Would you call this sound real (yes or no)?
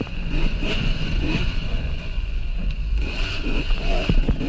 no